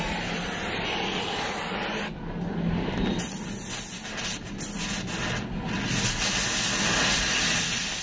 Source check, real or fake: real